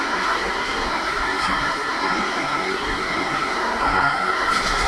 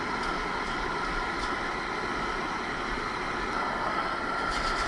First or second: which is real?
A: second